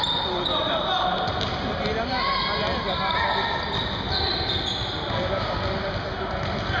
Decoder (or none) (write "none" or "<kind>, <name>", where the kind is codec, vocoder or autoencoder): none